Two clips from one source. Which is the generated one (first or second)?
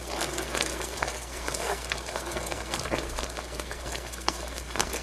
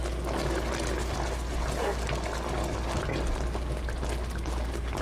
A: first